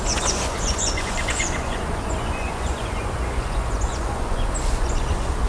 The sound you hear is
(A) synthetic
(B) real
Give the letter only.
A